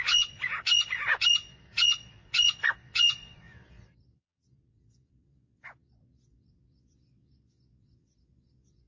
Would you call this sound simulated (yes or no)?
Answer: yes